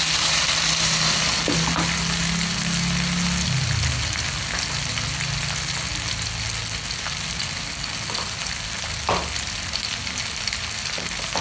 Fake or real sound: real